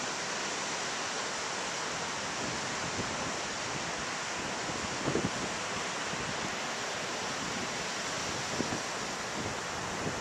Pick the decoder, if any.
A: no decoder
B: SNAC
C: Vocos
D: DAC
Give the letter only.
A